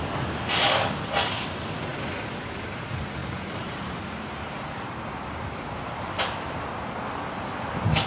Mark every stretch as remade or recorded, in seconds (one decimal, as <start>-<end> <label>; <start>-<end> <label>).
0.0-3.2 recorded; 3.2-6.7 remade; 6.7-8.1 recorded